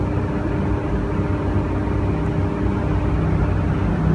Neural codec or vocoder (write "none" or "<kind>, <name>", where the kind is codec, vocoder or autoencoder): none